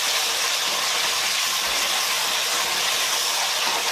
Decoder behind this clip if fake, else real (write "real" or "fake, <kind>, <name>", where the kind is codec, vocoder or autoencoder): real